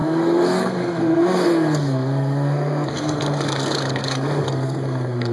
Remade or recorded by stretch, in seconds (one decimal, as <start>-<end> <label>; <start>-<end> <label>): 0.0-5.3 remade